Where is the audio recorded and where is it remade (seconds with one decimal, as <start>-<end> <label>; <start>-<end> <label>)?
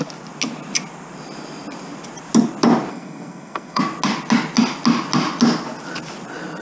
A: 0.0-2.9 recorded; 2.9-3.8 remade; 3.8-6.6 recorded